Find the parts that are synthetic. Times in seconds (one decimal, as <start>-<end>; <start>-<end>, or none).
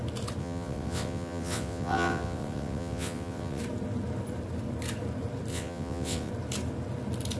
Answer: 0.4-3.6; 5.5-6.3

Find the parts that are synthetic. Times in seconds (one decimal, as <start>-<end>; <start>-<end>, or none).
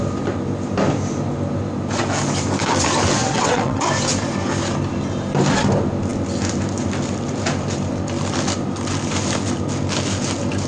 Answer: 3.2-3.8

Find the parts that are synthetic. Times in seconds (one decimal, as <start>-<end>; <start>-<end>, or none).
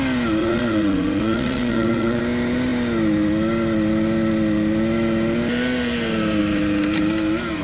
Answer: 0.4-2.2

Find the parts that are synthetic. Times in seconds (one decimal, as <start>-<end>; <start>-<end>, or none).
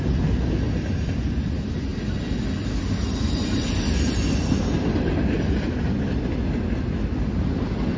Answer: none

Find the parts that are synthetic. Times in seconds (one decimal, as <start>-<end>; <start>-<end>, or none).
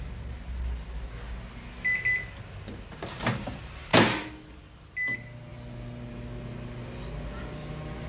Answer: none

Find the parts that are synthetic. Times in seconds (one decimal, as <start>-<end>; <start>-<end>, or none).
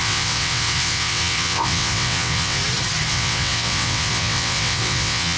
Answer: 0.0-2.6; 3.1-5.4